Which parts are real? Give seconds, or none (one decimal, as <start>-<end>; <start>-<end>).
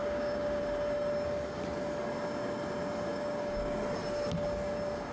0.6-3.1; 3.8-5.1